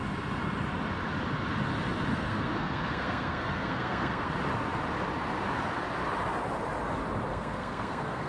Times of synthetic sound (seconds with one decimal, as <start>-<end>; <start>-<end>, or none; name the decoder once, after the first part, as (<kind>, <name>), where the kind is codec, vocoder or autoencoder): 2.1-4.3 (codec, SNAC); 7.3-8.3